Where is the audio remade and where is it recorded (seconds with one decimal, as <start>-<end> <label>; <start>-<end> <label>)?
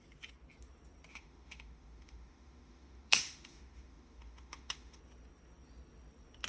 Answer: 0.0-1.1 recorded; 1.1-5.0 remade; 5.0-6.5 recorded